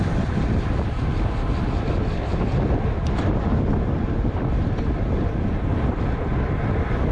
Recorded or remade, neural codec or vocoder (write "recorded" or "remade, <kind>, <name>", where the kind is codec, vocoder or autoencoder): remade, vocoder, BigVGAN v2